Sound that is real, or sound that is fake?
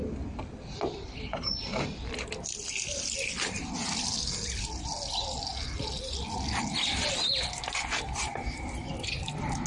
real